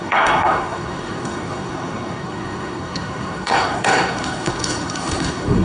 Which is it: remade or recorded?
remade